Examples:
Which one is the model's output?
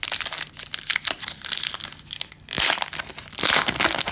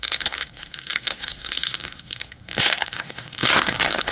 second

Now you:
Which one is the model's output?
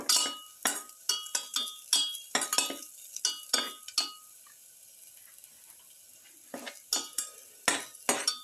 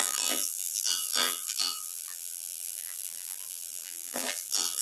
second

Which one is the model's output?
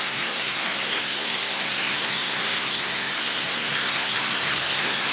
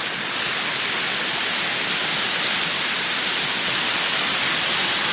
first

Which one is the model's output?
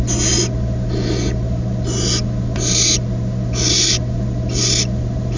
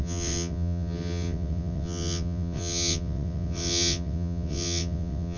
second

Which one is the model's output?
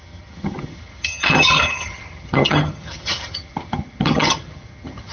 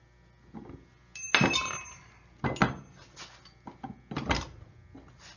first